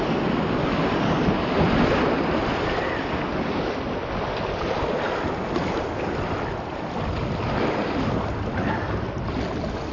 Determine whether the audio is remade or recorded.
recorded